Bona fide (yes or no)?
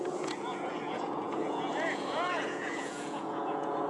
no